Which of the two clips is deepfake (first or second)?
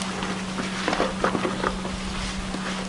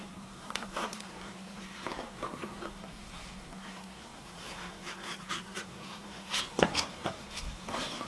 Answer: second